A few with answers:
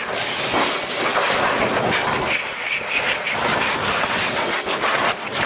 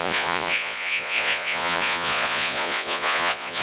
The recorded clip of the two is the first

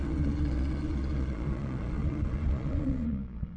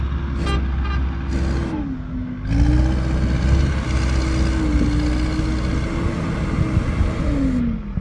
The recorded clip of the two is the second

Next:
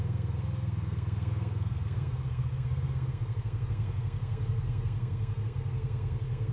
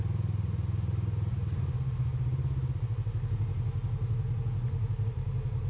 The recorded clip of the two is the second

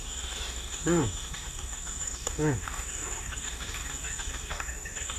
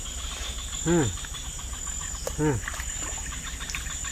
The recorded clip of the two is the second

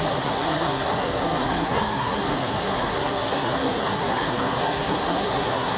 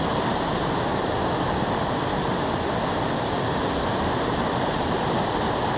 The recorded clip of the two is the second